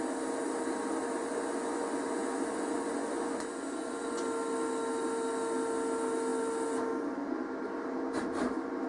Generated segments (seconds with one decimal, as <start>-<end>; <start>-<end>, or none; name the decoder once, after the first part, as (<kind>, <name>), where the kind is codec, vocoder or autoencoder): 1.2-4.2 (vocoder, Vocos)